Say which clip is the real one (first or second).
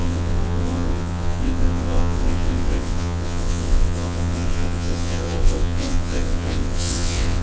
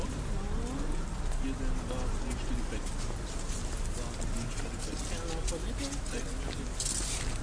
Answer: second